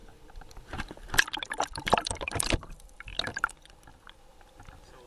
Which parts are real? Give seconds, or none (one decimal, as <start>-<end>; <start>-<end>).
2.7-5.1